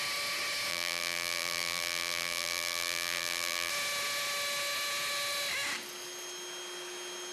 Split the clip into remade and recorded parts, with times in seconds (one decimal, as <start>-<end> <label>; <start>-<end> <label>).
0.0-0.7 recorded; 0.7-3.7 remade; 3.7-7.3 recorded